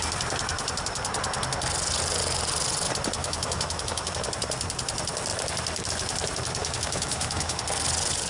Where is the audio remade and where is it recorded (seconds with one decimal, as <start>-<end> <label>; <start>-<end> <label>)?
0.0-3.2 recorded; 3.2-4.1 remade; 4.1-6.6 recorded; 6.6-7.6 remade; 7.6-8.3 recorded

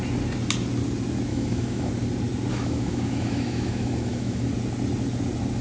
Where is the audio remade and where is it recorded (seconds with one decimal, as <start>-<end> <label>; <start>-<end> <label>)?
0.0-1.3 recorded; 1.3-1.9 remade; 1.9-2.5 recorded; 2.5-4.5 remade; 4.5-5.6 recorded

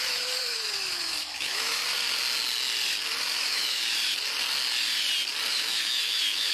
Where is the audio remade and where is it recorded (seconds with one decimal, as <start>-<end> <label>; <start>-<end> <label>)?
0.0-1.8 remade; 1.8-3.3 recorded; 3.3-3.8 remade; 3.8-5.5 recorded; 5.5-6.5 remade

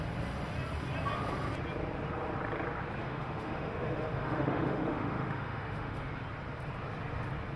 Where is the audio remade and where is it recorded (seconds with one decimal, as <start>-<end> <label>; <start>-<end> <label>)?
0.0-3.0 recorded; 3.0-6.1 remade; 6.1-7.6 recorded

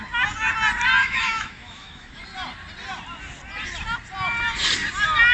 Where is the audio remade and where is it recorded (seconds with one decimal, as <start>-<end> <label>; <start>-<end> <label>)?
0.0-1.0 recorded; 1.0-2.2 remade; 2.2-5.3 recorded

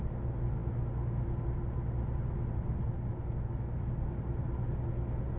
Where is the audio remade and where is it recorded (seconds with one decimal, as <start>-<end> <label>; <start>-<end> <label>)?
0.0-5.4 recorded

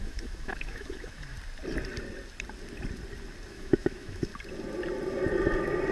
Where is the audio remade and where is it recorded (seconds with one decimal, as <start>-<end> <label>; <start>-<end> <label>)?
0.0-1.3 remade; 1.3-3.5 recorded; 3.5-4.3 remade; 4.3-5.9 recorded